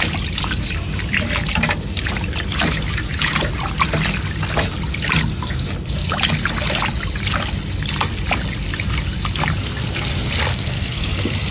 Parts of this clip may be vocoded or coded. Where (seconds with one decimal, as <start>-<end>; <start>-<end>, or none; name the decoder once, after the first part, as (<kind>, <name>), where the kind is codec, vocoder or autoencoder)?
10.5-11.1 (codec, SNAC)